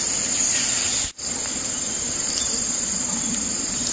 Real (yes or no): yes